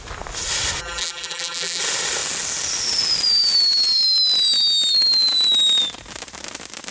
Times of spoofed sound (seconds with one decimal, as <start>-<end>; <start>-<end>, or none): 0.8-1.8